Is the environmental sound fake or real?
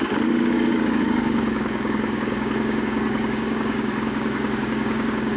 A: fake